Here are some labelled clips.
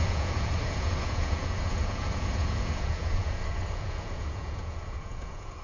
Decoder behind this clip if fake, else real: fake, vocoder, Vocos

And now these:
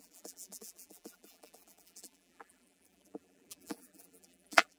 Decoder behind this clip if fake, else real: fake, vocoder, BigVGAN v2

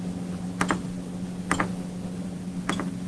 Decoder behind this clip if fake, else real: real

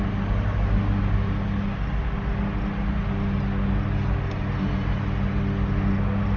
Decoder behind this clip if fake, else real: real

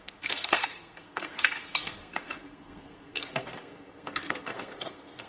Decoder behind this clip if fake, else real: fake, codec, SNAC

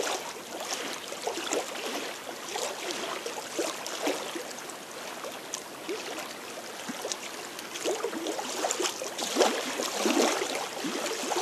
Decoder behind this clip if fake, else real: real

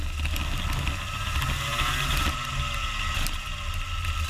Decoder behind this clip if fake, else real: real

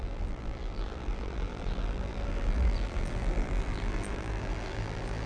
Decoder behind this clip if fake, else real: fake, vocoder, BigVGAN v2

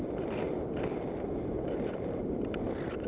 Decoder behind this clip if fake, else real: real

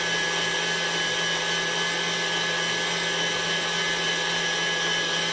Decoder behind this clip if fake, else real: real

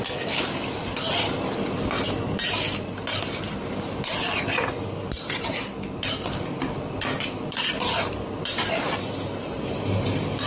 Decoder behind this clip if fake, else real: real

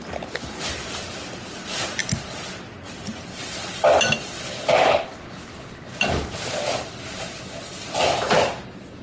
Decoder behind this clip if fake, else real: real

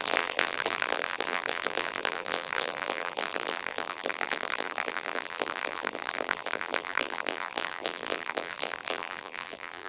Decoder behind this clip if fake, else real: fake, vocoder, BigVGAN v2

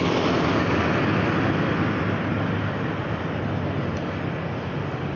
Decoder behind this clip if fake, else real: real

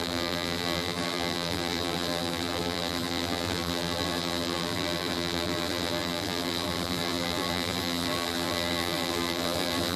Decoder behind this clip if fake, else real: fake, vocoder, BigVGAN v2